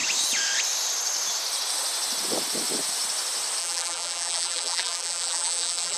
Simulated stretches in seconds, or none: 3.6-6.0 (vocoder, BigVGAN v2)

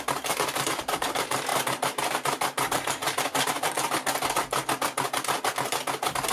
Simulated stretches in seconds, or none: 0.0-3.0 (vocoder, BigVGAN v2)